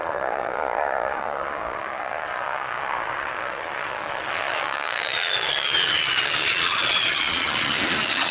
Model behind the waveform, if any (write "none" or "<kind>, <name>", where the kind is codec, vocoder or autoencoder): vocoder, Vocos